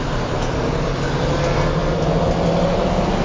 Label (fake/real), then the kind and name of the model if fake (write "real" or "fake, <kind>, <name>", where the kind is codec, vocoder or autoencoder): real